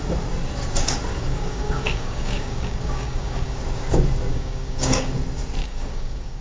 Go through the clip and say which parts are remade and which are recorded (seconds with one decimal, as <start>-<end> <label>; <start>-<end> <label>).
0.0-1.1 recorded; 1.1-3.6 remade; 3.6-4.3 recorded; 4.3-5.1 remade; 5.1-5.6 recorded; 5.6-6.4 remade